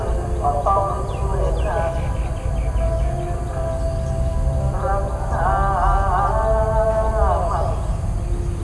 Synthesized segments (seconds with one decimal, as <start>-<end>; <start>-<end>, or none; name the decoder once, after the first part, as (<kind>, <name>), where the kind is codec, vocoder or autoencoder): none